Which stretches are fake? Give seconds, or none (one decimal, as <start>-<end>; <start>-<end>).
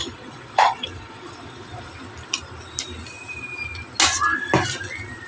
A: 0.0-1.9